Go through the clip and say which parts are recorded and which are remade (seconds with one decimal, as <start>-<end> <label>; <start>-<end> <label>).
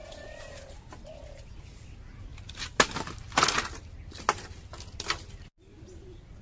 0.0-6.4 recorded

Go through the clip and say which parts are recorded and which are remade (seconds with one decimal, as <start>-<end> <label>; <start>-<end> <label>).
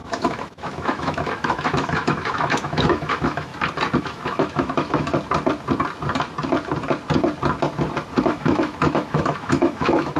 0.0-3.5 remade; 3.5-4.0 recorded; 4.0-5.1 remade; 5.1-8.2 recorded; 8.2-10.2 remade